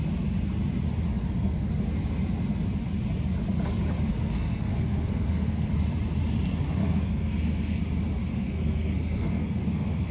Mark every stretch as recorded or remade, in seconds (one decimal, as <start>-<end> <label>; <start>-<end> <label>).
0.0-1.1 recorded; 1.1-1.7 remade; 1.7-4.1 recorded; 4.1-5.7 remade; 5.7-6.8 recorded; 6.8-7.8 remade; 7.8-8.3 recorded; 8.3-10.1 remade